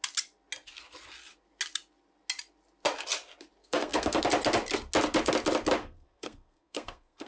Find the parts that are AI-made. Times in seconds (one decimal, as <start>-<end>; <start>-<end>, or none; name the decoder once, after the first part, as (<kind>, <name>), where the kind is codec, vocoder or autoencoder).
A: 3.6-4.2 (codec, SNAC); 5.8-7.3